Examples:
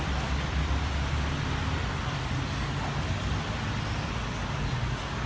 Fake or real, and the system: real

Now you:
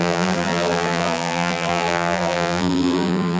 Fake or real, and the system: fake, vocoder, BigVGAN v2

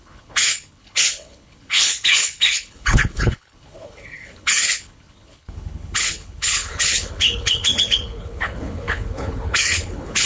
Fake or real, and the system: fake, codec, HILCodec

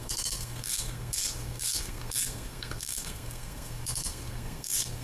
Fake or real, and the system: fake, codec, SNAC